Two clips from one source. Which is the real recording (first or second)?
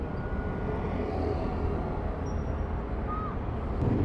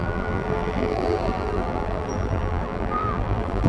first